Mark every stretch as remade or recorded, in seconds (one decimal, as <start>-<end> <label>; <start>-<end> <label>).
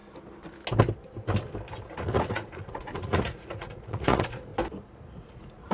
0.0-1.9 recorded; 1.9-4.5 remade; 4.5-5.1 recorded; 5.1-5.7 remade